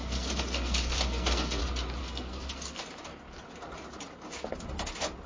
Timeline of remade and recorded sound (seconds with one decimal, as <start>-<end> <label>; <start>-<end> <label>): 0.0-1.6 remade; 1.6-2.0 recorded; 2.0-2.8 remade; 2.8-5.3 recorded